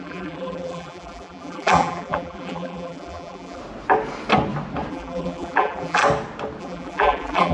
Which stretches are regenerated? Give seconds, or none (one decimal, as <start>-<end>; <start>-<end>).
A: 0.0-3.6; 4.9-6.0; 6.6-7.5